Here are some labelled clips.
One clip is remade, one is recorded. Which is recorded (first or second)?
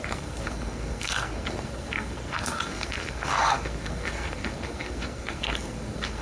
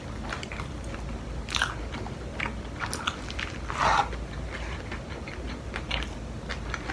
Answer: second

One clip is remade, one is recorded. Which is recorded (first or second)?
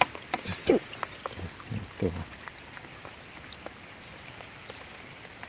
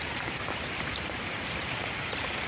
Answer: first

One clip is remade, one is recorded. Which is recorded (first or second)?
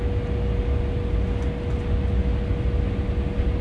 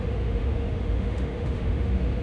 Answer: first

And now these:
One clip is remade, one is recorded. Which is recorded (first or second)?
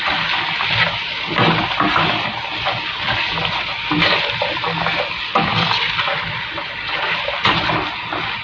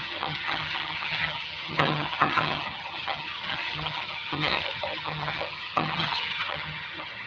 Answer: first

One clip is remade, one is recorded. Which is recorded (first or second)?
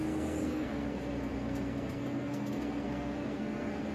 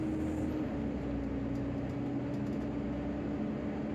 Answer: second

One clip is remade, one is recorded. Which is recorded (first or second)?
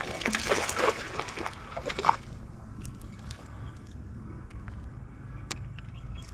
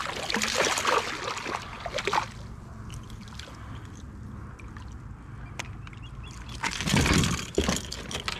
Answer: second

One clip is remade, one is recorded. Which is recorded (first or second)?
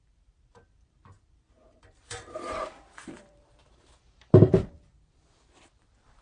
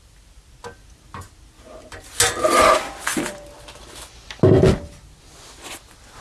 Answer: second